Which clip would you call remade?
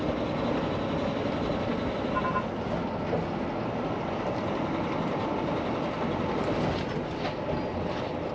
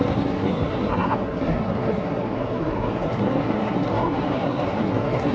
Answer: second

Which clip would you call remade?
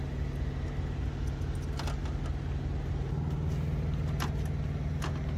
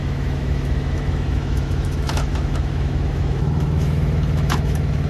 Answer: second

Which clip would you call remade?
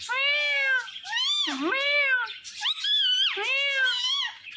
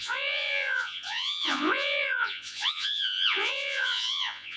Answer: second